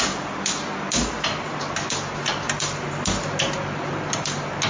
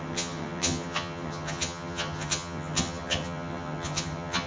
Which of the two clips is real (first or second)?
first